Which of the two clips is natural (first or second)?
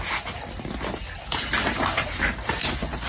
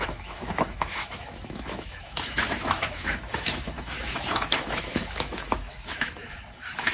first